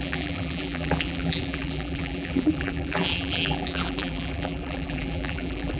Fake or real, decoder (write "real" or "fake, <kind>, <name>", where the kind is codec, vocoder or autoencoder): fake, vocoder, BigVGAN v2